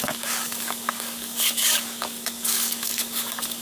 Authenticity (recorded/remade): remade